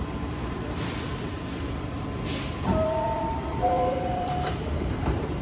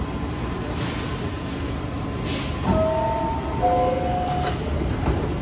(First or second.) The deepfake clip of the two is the first